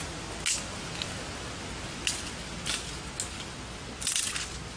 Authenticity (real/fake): real